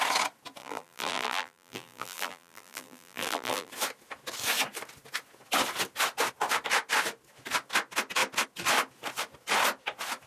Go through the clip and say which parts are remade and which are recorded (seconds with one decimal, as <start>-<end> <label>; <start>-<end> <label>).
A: 0.0-0.6 recorded; 0.6-3.7 remade; 3.7-10.3 recorded